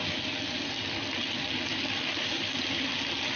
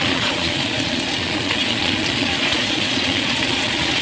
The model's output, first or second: second